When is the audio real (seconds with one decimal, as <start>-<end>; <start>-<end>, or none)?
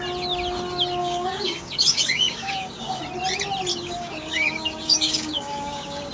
0.0-1.0; 3.0-3.7